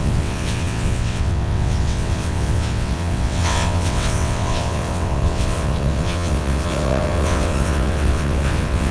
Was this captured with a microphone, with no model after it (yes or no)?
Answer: no